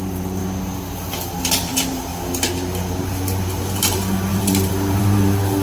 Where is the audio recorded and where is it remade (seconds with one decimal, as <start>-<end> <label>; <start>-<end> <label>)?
0.0-0.4 remade; 0.4-1.4 recorded; 1.4-2.1 remade; 2.1-3.0 recorded; 3.0-5.6 remade